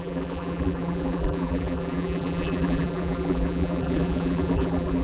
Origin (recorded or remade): remade